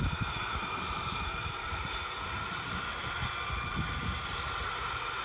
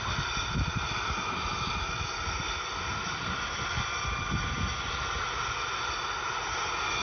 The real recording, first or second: second